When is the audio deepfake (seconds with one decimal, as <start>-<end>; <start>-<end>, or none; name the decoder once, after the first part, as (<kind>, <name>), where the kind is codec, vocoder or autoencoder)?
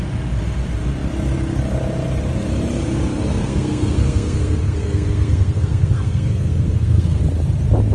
3.3-7.2 (codec, SNAC)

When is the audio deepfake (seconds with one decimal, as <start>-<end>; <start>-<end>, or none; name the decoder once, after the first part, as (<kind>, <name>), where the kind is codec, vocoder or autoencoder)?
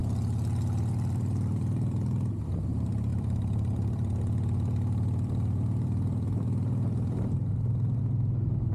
0.8-8.7 (vocoder, BigVGAN v2)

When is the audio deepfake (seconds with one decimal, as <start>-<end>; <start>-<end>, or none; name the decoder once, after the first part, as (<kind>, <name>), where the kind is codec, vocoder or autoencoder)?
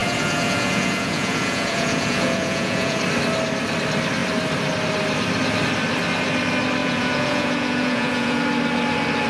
0.0-3.0 (vocoder, Vocos); 6.8-8.4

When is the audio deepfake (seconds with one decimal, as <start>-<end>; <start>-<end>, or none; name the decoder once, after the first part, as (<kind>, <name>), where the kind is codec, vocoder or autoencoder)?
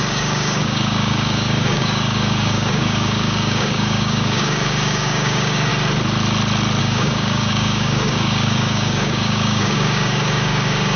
0.0-5.7 (codec, DAC); 6.8-11.0